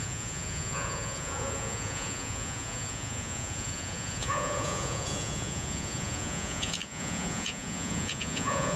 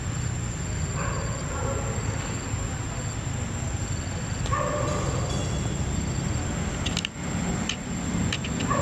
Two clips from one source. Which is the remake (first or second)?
first